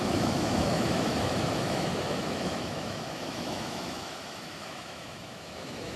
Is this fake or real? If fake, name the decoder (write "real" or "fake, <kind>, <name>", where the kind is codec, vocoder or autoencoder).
fake, autoencoder, DAC-VAE